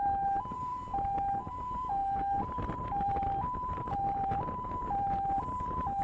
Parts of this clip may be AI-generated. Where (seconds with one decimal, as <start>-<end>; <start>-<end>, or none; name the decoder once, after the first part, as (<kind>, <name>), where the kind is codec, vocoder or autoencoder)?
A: 0.0-0.7 (vocoder, BigVGAN v2); 1.4-6.0